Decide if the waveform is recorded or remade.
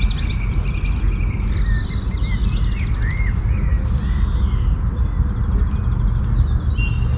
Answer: recorded